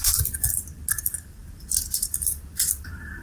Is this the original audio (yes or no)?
yes